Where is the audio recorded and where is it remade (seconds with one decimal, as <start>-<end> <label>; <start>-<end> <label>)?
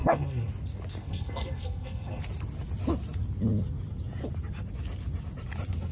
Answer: 0.0-0.5 remade; 0.5-1.0 recorded; 1.0-2.2 remade; 2.2-5.9 recorded